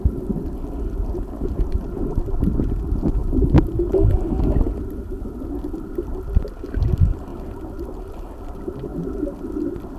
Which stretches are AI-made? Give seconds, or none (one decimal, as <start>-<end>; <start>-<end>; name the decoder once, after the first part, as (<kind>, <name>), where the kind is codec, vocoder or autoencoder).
none